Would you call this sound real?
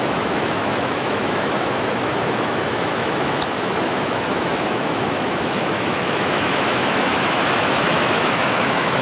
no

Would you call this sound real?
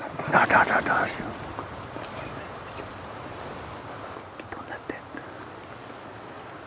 yes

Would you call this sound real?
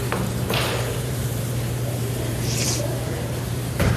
no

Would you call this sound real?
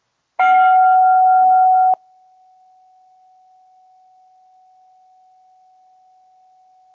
yes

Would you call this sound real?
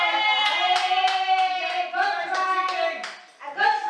no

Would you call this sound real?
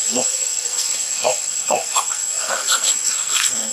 no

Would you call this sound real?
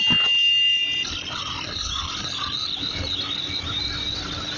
yes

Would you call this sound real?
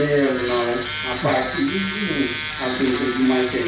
yes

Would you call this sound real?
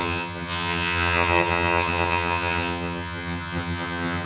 no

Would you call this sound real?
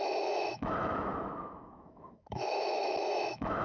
no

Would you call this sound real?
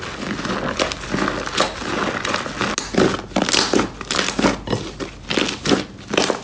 yes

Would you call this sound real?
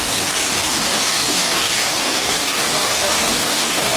no